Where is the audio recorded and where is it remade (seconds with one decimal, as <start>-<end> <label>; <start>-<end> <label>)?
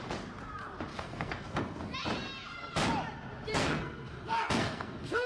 0.0-0.9 recorded; 0.9-1.8 remade; 1.8-3.5 recorded; 3.5-5.3 remade